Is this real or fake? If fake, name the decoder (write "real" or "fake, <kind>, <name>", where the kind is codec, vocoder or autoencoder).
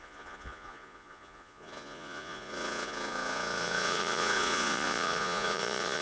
fake, vocoder, Vocos